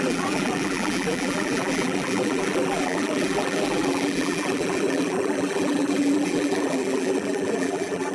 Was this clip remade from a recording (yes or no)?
yes